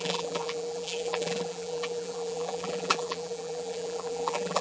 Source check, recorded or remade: remade